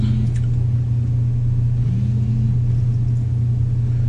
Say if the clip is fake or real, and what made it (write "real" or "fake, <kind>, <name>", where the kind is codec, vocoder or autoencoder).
real